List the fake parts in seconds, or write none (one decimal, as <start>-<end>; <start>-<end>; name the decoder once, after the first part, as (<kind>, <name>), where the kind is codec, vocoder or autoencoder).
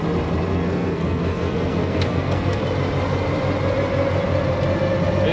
0.5-2.6 (codec, SNAC)